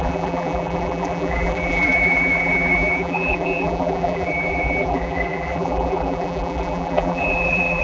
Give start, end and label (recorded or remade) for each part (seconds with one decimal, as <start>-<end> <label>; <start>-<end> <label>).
0.0-7.8 remade